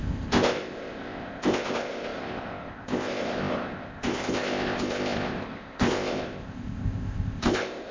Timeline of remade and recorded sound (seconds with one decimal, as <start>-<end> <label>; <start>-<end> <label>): 0.0-7.9 remade